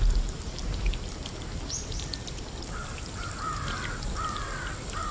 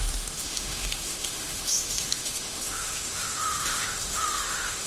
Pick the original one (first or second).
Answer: first